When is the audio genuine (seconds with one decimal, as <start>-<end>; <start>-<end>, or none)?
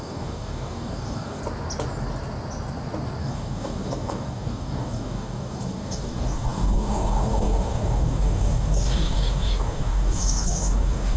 1.4-3.2